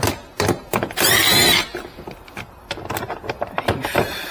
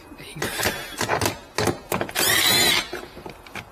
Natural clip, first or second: second